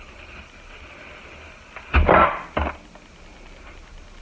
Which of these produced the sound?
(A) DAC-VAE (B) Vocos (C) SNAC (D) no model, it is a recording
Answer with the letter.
D